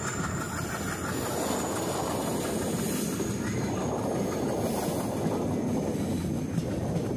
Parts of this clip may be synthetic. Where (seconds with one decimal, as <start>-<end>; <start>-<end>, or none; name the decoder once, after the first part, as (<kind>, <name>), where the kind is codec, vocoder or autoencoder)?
none